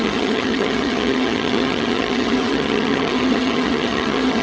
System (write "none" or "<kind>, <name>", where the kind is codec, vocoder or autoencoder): vocoder, HiFi-GAN